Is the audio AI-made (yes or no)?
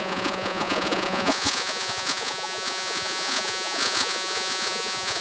yes